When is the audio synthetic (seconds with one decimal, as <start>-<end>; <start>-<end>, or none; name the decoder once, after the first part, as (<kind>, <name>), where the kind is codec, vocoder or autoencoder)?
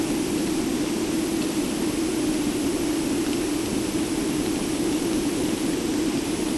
0.7-1.6 (vocoder, BigVGAN v2); 4.2-5.7